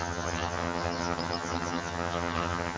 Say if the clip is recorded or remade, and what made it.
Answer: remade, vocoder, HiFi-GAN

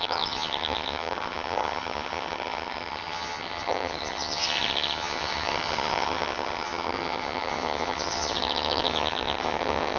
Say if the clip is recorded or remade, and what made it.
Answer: remade, vocoder, HiFi-GAN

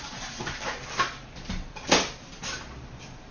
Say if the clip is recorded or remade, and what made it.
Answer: recorded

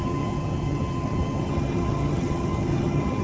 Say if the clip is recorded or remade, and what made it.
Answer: remade, vocoder, HiFi-GAN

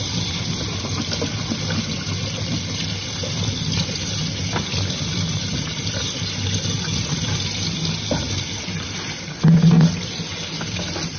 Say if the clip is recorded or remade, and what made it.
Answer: recorded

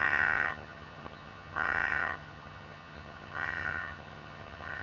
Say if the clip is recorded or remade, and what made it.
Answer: remade, vocoder, HiFi-GAN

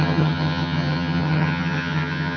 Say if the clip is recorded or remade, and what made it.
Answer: remade, vocoder, HiFi-GAN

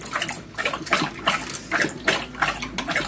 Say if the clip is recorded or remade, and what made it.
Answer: recorded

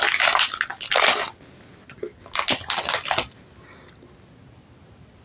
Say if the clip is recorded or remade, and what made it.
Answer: recorded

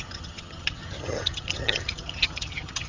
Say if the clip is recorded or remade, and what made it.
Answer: remade, vocoder, HiFi-GAN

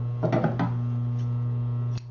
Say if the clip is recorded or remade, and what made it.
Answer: recorded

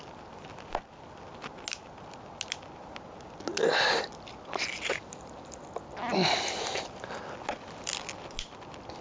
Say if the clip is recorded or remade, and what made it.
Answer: recorded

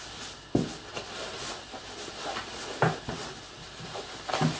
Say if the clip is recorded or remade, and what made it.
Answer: recorded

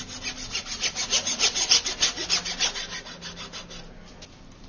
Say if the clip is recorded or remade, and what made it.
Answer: recorded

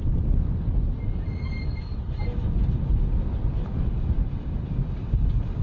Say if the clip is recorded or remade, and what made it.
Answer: recorded